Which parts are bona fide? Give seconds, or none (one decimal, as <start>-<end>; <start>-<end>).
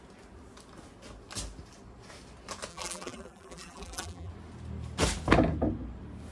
0.0-2.7; 4.3-6.3